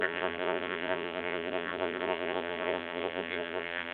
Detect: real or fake fake